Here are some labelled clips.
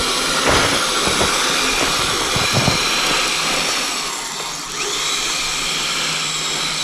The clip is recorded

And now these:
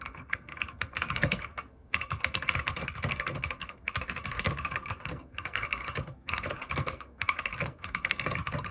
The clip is remade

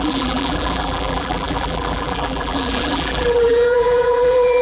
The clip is remade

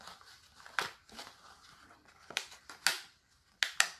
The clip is recorded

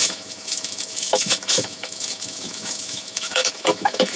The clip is remade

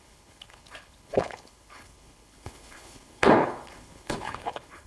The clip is remade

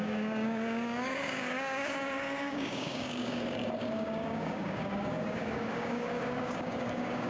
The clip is remade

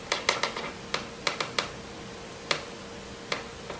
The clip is recorded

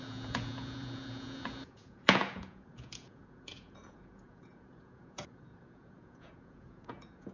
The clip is remade